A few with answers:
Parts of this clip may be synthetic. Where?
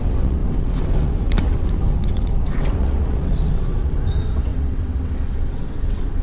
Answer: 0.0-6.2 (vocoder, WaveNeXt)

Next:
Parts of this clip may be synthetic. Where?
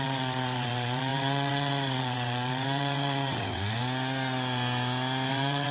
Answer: 0.0-3.8 (vocoder, WaveNeXt); 5.3-5.7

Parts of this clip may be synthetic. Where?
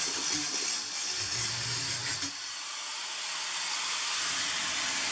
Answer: none